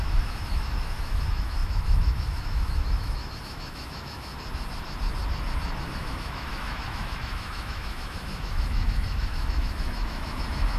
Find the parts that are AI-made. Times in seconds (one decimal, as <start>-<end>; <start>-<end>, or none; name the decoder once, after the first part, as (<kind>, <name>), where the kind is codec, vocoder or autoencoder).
0.0-4.3 (autoencoder, DAC-VAE); 5.8-10.8